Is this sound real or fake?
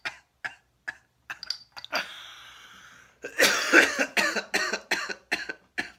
real